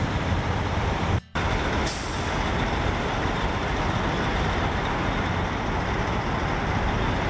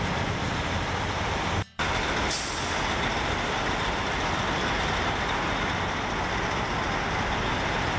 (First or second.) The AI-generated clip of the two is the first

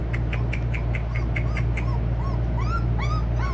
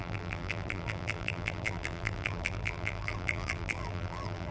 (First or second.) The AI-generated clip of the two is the second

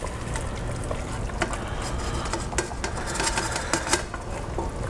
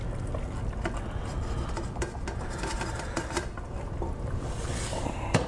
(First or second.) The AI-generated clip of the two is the second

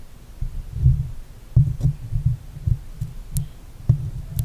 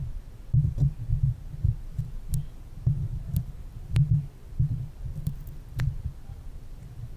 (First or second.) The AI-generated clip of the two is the second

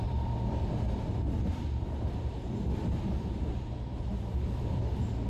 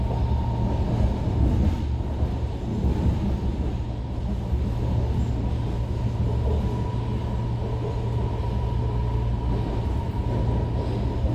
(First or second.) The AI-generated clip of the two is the first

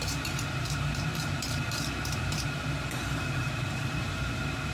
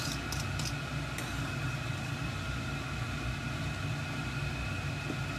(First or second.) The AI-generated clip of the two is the first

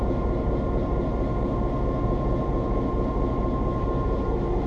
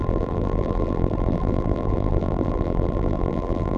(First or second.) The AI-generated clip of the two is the second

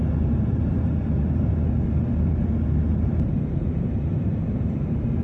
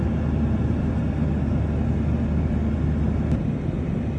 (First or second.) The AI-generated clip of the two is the first